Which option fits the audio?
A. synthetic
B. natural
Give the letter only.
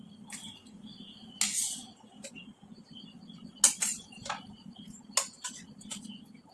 B